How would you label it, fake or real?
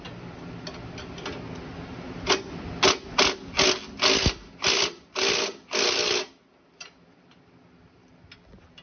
real